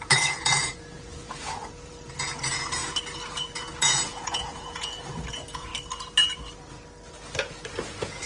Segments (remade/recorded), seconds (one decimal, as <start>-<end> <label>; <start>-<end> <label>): 0.0-2.8 remade; 2.8-3.3 recorded; 3.3-5.7 remade; 5.7-7.9 recorded; 7.9-8.3 remade